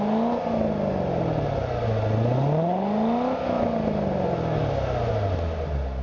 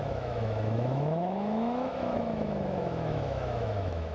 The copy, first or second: second